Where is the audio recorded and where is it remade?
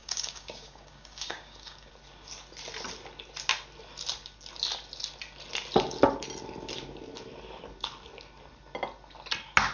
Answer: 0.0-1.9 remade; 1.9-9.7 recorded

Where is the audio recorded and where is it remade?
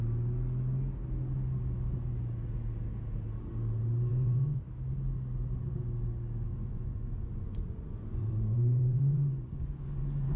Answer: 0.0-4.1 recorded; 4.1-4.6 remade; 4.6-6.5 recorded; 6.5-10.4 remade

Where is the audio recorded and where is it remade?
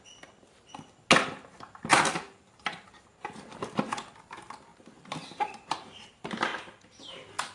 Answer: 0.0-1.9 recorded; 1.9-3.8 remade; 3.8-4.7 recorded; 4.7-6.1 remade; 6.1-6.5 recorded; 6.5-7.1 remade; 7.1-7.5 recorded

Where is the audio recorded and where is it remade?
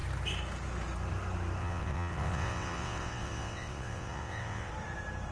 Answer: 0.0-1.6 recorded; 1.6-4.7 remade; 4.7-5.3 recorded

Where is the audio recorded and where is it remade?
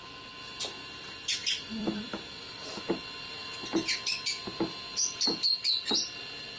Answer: 0.0-1.4 recorded; 1.4-2.8 remade; 2.8-6.6 recorded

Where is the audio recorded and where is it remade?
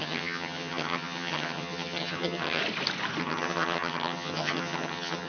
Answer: 0.0-2.6 remade; 2.6-3.2 recorded; 3.2-5.3 remade